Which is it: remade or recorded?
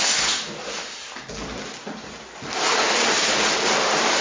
recorded